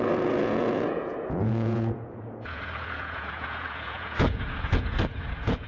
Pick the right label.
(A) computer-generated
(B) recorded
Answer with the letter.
A